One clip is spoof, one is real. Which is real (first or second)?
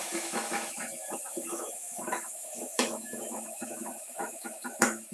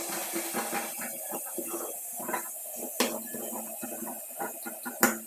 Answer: second